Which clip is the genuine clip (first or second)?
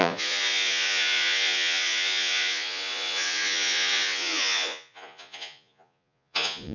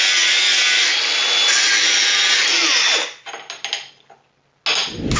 second